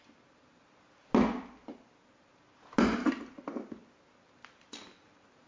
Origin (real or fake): real